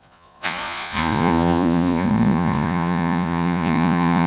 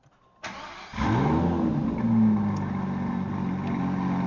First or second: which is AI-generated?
first